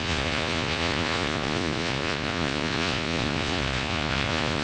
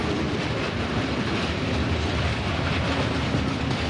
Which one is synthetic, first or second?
first